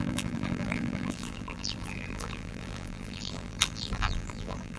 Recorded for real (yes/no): no